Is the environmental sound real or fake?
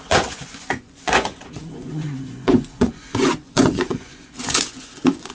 fake